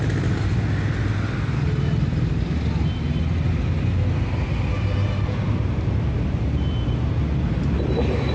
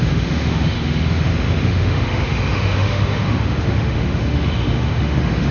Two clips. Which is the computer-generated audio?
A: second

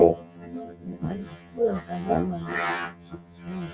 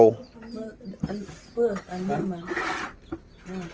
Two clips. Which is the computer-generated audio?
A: first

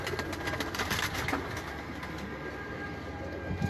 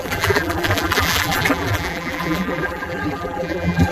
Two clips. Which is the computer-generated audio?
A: second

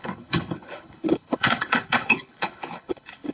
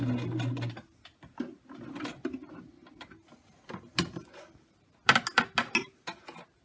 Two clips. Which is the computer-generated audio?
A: first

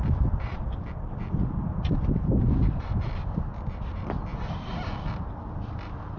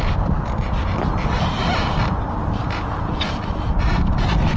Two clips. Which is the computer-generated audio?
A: second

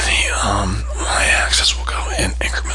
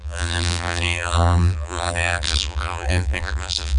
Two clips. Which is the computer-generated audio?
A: second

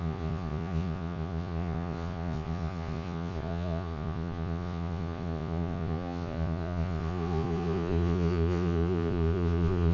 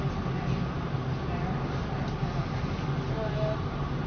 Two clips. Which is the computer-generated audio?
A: first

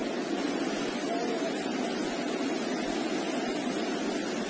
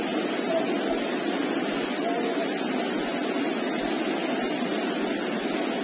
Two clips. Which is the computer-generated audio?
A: second